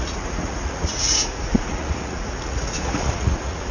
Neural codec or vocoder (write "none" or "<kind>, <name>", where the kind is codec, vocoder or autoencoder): vocoder, Vocos